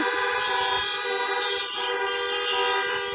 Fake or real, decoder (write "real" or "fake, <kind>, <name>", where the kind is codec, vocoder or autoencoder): real